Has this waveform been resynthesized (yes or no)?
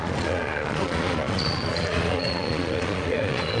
yes